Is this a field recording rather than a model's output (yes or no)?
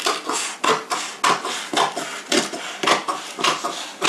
yes